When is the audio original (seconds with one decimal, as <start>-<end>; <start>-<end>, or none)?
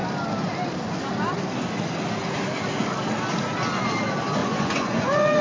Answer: 0.0-4.4